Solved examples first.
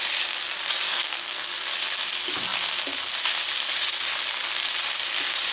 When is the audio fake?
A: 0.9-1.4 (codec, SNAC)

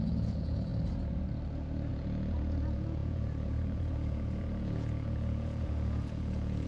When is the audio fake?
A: 0.0-0.7 (vocoder, Vocos); 1.9-6.7

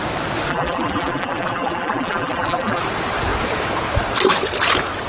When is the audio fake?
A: 0.5-2.8 (vocoder, BigVGAN v2)

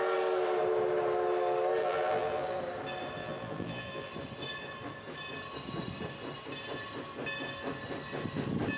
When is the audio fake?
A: 1.8-2.6 (vocoder, BigVGAN v2); 3.2-4.1

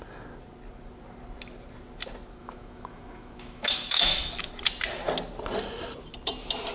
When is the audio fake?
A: 2.4-4.5 (autoencoder, DAC-VAE)

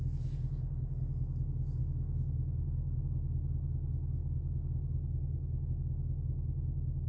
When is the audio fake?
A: 1.8-3.0 (codec, DAC)

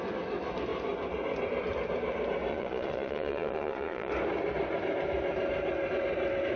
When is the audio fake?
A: 2.5-4.1 (vocoder, Vocos)

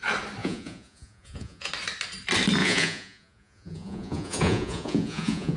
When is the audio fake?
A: 0.4-1.7 (vocoder, Vocos); 2.6-5.6